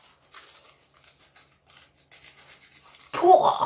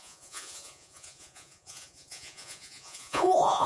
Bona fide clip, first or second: first